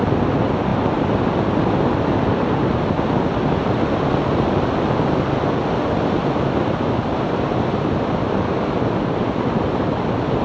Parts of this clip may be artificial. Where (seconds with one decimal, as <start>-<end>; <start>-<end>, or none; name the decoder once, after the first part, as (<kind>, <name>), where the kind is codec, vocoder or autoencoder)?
none